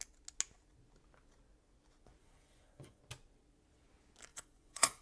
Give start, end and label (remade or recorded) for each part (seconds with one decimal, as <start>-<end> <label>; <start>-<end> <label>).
0.0-2.2 recorded; 2.2-3.0 remade; 3.0-4.3 recorded; 4.3-5.0 remade